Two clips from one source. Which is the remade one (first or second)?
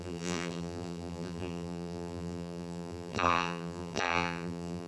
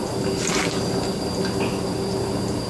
first